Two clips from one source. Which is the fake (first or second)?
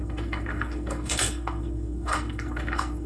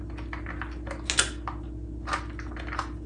first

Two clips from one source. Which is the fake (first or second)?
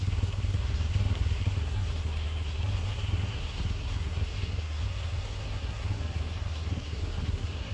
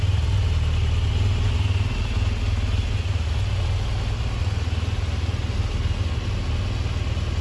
first